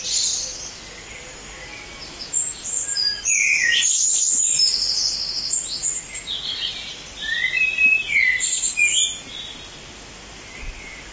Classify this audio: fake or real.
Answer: real